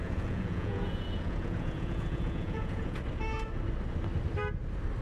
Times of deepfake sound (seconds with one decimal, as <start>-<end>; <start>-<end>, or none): 0.0-3.0